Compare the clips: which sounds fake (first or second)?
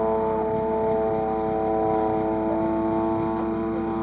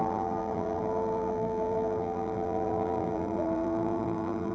second